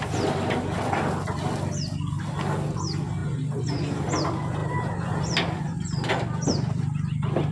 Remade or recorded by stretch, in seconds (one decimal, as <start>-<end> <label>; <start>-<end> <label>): 0.0-7.5 recorded